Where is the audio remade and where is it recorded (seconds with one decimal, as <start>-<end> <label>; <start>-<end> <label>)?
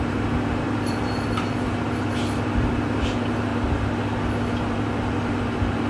0.0-3.5 remade; 3.5-4.6 recorded; 4.6-5.9 remade